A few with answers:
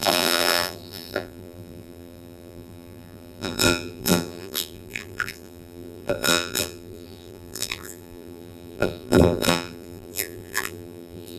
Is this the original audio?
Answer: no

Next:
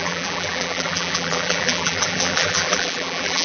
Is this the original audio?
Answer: no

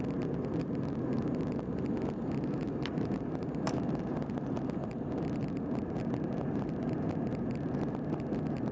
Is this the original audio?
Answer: no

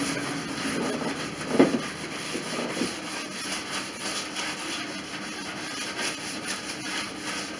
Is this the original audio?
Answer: yes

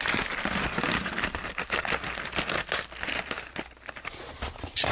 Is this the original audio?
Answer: no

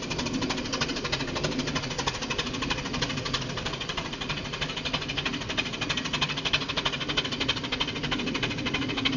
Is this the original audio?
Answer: yes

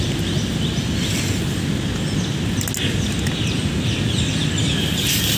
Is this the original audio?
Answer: yes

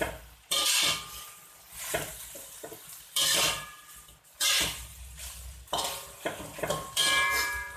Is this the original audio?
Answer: no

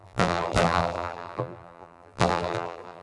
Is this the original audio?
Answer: no